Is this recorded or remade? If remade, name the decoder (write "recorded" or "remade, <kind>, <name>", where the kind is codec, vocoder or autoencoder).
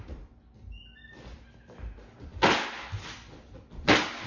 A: recorded